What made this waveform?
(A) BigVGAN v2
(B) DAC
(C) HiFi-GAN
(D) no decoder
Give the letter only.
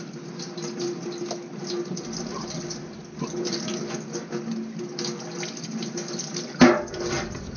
D